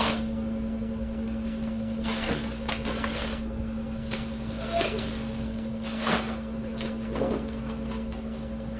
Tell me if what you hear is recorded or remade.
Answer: remade